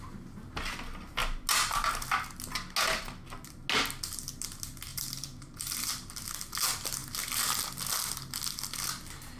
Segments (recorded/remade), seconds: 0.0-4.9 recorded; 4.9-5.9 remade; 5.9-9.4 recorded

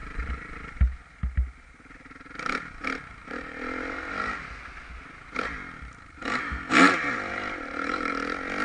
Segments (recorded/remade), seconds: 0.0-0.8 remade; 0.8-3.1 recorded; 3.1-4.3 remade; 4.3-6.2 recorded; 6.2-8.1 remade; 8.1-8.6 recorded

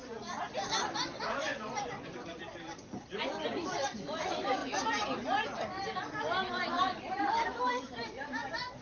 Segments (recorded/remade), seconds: 0.0-4.6 remade; 4.6-6.5 recorded; 6.5-8.8 remade